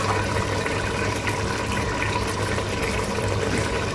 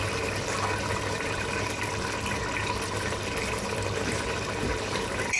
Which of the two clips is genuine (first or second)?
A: first